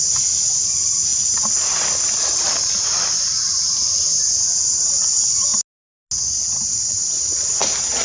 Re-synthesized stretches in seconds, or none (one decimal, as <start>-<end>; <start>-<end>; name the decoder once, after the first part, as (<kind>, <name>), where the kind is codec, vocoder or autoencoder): none